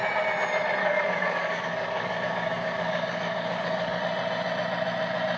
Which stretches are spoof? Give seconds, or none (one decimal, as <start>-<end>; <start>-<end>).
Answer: 0.8-4.0